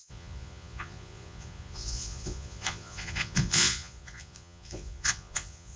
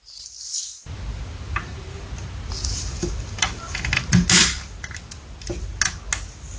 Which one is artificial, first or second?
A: first